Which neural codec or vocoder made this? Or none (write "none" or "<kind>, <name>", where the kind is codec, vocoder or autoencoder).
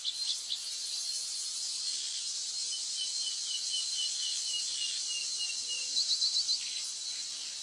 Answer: none